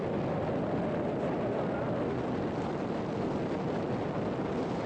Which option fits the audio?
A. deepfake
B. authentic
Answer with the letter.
B